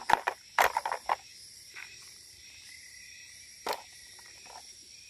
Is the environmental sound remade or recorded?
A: recorded